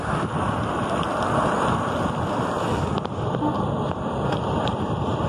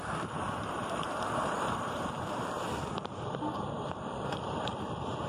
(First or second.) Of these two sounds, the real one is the first